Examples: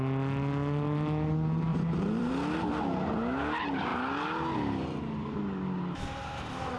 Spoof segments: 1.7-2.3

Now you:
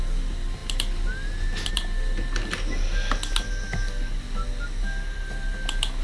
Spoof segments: none

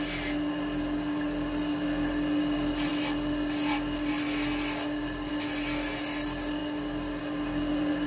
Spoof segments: none

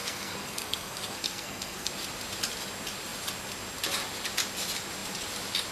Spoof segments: 0.0-1.9